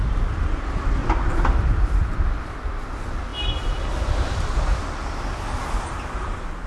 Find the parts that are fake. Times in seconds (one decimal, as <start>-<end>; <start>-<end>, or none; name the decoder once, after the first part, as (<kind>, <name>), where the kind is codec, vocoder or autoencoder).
1.0-2.4 (vocoder, BigVGAN v2); 3.3-4.8